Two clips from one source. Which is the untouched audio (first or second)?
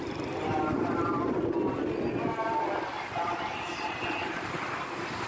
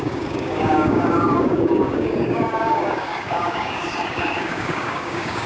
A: first